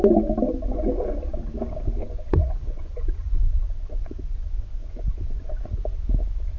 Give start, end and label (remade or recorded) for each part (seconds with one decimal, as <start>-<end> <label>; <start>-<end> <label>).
0.0-2.0 recorded; 2.0-5.8 remade; 5.8-6.6 recorded